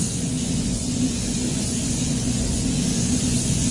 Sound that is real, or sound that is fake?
fake